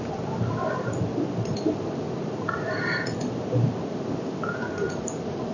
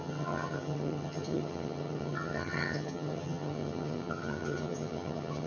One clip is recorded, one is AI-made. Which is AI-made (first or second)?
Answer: second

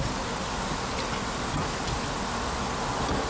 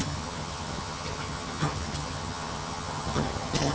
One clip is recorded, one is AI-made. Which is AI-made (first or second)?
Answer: second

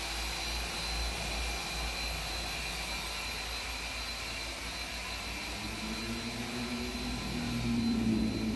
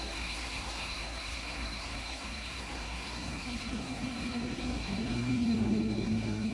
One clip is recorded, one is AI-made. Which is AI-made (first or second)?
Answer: second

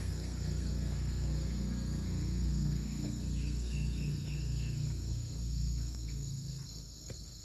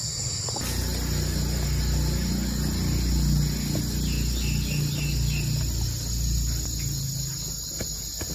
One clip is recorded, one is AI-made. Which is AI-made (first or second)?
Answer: first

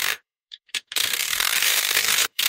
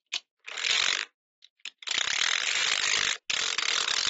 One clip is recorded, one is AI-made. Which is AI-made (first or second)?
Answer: first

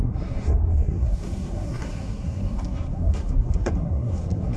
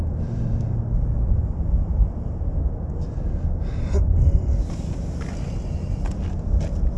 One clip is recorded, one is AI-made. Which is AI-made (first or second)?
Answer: first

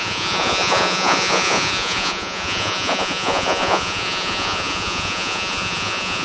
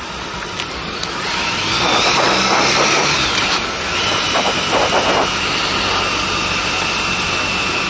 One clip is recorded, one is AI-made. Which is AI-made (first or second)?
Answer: first